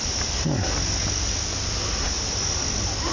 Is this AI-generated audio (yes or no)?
no